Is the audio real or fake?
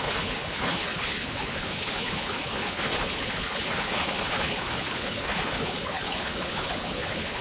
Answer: fake